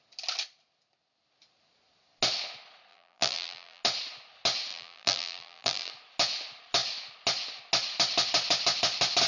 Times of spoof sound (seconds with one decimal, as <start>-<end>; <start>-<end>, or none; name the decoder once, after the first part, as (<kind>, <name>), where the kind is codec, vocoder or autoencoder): 2.9-3.8 (vocoder, BigVGAN v2); 4.7-5.9